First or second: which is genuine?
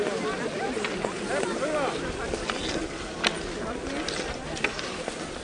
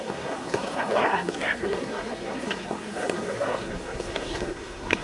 first